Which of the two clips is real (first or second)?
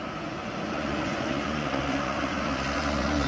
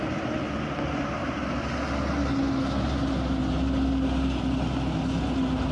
second